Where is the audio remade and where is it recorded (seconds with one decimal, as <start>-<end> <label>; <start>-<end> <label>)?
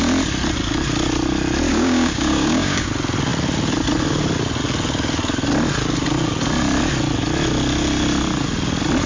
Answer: 0.0-1.7 recorded; 1.7-2.9 remade; 2.9-9.1 recorded